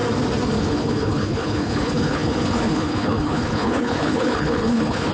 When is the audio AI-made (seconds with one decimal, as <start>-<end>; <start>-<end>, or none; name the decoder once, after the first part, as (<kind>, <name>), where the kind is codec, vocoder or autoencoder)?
0.6-5.1 (codec, HILCodec)